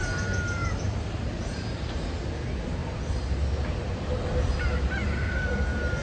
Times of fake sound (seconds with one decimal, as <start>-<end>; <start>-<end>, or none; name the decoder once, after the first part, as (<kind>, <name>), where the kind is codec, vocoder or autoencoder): 0.6-2.1 (vocoder, BigVGAN v2); 2.8-3.6